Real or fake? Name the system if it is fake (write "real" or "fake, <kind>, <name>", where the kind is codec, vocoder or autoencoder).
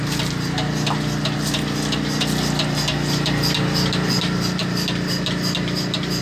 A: real